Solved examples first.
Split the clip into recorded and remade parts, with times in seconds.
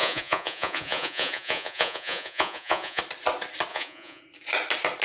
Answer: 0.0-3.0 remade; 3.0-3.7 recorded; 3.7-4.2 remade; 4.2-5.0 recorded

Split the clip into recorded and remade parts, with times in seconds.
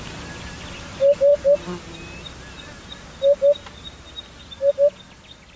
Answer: 0.0-5.6 recorded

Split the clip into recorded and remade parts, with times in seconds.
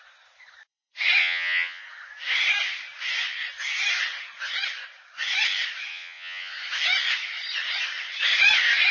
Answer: 0.0-1.2 recorded; 1.2-1.8 remade; 1.8-5.9 recorded; 5.9-6.5 remade; 6.5-8.9 recorded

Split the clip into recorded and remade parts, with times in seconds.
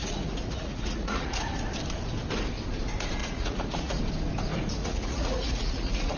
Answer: 0.0-1.5 remade; 1.5-3.2 recorded; 3.2-4.0 remade; 4.0-4.8 recorded; 4.8-6.2 remade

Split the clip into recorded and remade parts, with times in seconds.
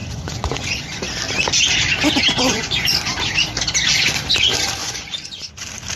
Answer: 0.0-1.0 remade; 1.0-2.2 recorded; 2.2-3.1 remade; 3.1-4.8 recorded; 4.8-5.6 remade; 5.6-6.0 recorded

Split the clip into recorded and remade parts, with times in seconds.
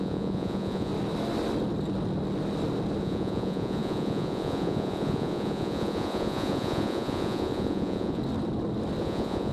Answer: 0.0-0.9 remade; 0.9-3.0 recorded; 3.0-8.2 remade; 8.2-9.0 recorded; 9.0-9.5 remade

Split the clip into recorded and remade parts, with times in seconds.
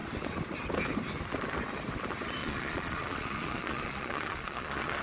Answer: 0.0-2.4 recorded; 2.4-5.0 remade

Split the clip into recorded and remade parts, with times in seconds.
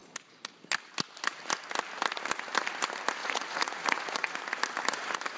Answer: 0.0-3.2 recorded; 3.2-4.4 remade; 4.4-5.4 recorded